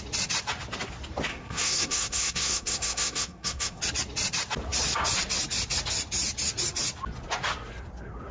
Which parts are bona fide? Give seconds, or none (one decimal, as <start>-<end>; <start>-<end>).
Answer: 0.0-1.3; 3.8-8.3